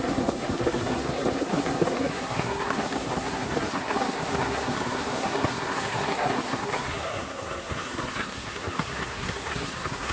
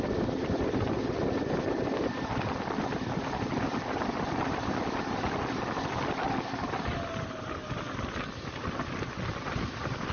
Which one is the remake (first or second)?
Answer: first